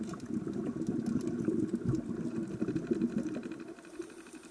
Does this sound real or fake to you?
real